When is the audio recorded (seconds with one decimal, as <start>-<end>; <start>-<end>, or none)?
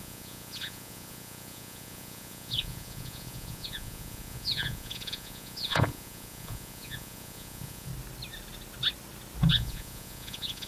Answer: 7.9-9.5